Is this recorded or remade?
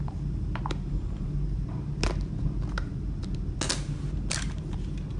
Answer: recorded